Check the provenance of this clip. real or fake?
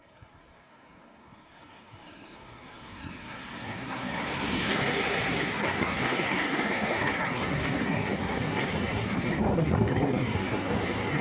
fake